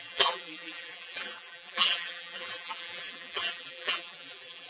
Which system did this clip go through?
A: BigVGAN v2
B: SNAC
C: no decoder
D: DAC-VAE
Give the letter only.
A